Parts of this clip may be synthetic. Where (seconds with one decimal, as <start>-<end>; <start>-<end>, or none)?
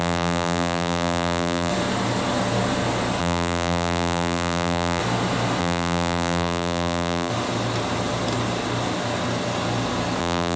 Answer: 0.0-1.7; 3.2-5.0; 5.6-7.3; 10.2-10.6